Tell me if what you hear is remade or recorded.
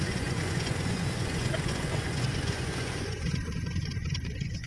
remade